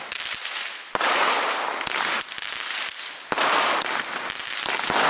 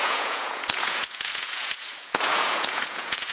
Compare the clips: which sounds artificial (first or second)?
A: second